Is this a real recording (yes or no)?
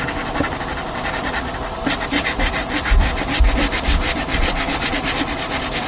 no